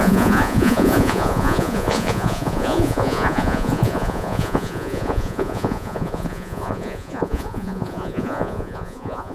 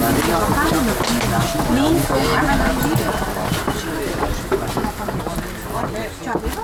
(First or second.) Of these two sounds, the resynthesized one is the first